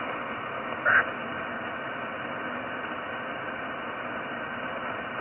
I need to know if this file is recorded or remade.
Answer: recorded